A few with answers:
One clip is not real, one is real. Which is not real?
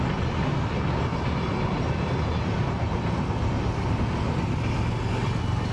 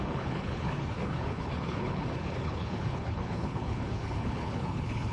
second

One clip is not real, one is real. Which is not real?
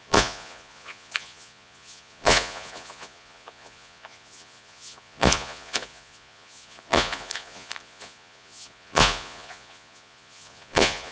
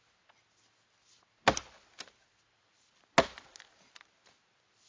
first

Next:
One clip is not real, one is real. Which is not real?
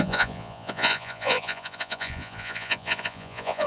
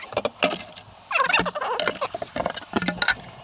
first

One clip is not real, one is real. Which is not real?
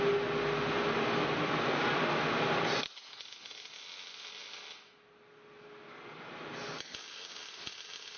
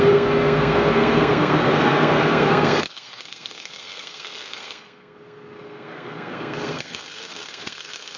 second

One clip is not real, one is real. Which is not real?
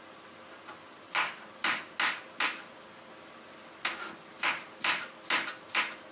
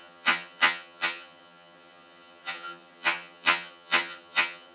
second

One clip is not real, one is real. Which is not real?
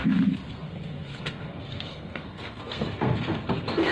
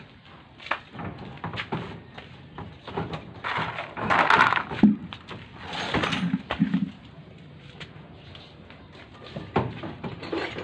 first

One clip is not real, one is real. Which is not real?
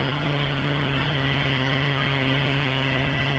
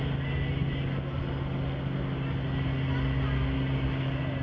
first